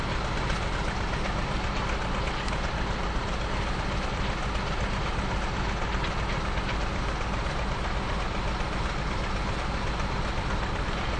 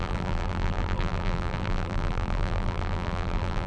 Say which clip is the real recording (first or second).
first